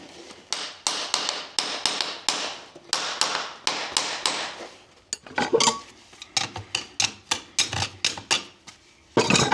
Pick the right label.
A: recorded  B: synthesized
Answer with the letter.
A